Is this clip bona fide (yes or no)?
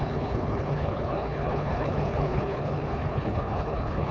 no